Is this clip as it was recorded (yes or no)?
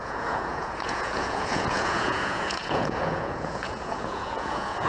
no